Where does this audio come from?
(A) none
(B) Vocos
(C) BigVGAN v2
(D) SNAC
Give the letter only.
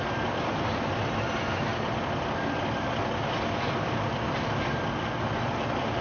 A